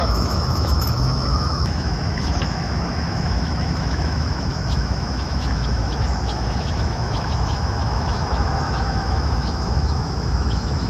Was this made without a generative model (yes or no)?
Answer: no